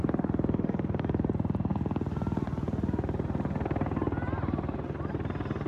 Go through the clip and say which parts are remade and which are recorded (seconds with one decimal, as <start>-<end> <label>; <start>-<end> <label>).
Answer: 0.0-5.7 recorded